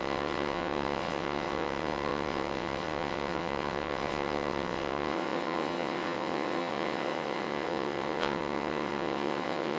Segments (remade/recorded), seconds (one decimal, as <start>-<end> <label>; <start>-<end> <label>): 0.0-9.8 remade